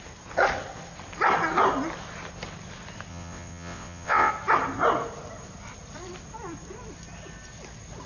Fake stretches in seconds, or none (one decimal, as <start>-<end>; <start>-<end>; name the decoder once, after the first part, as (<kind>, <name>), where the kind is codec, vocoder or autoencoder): 3.1-4.3 (vocoder, WaveNeXt)